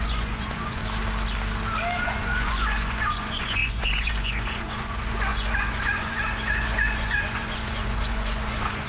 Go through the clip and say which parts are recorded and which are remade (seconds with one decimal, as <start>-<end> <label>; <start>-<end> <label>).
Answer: 0.0-0.8 remade; 0.8-2.0 recorded; 2.0-8.9 remade